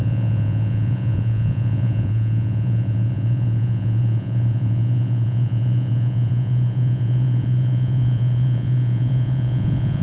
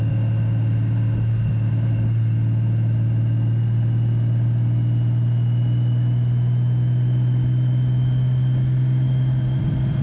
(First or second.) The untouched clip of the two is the second